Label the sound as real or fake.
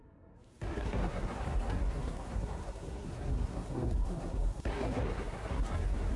fake